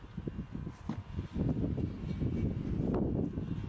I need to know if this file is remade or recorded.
recorded